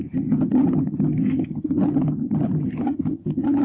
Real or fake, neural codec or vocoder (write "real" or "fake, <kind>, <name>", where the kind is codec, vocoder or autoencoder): fake, vocoder, HiFi-GAN